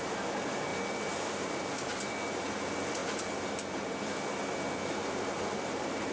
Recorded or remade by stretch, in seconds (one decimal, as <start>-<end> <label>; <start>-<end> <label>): 0.0-6.1 recorded